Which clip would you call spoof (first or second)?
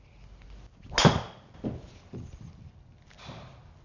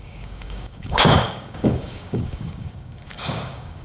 second